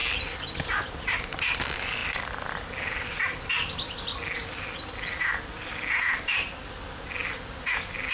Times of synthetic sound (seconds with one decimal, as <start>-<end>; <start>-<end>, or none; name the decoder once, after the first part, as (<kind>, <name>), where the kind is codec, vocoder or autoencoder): none